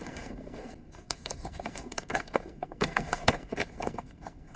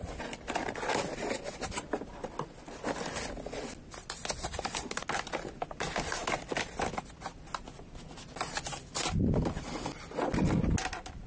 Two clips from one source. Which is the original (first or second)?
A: second